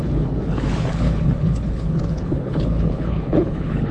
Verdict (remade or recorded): remade